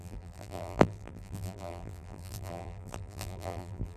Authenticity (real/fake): fake